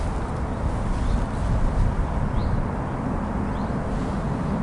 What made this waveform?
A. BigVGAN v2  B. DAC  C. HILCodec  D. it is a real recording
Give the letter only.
D